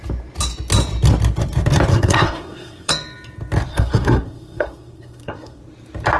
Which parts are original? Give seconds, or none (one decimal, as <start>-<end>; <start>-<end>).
0.0-1.9; 2.9-3.7; 5.6-6.2